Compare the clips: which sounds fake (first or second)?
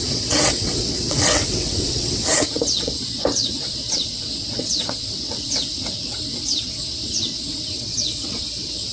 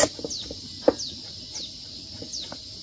first